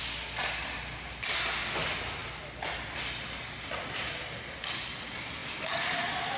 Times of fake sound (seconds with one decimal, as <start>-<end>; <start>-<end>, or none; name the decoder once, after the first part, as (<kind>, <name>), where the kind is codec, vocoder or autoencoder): none